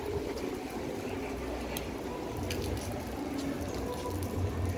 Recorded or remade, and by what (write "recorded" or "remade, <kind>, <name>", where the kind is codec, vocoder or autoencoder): recorded